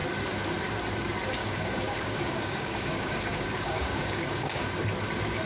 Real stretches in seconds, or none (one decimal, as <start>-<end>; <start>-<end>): 0.0-1.4; 4.7-5.5